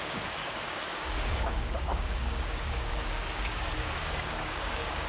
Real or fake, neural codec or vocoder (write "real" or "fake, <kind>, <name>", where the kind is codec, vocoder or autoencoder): fake, codec, DAC